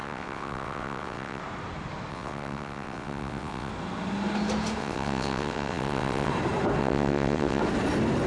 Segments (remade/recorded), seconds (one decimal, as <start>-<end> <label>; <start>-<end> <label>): 0.0-1.4 remade; 1.4-2.1 recorded; 2.1-3.7 remade; 3.7-4.8 recorded; 4.8-6.3 remade; 6.3-6.8 recorded; 6.8-7.6 remade; 7.6-8.3 recorded